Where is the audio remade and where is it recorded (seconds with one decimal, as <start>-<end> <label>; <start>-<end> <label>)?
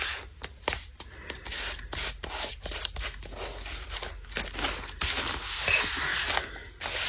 0.0-7.1 recorded